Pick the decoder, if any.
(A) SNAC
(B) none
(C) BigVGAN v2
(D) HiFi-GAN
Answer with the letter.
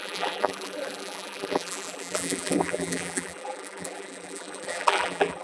C